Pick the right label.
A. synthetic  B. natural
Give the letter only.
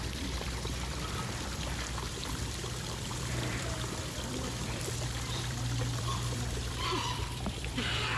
A